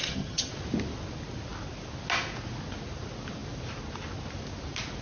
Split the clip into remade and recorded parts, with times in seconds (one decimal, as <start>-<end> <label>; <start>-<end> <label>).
0.0-0.5 remade; 0.5-5.0 recorded